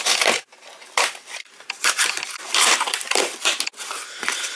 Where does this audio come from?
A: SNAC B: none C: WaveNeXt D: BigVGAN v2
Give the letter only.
B